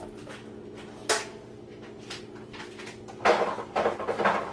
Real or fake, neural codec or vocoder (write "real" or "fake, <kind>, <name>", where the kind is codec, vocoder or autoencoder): real